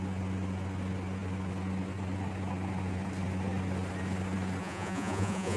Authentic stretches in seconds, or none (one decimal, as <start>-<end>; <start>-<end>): 0.0-4.6